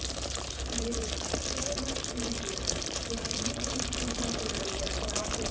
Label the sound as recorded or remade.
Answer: remade